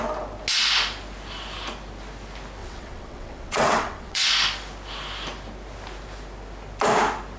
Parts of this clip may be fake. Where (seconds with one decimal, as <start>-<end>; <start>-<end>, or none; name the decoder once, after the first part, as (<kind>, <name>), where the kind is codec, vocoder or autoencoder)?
2.6-4.3 (vocoder, WaveNeXt)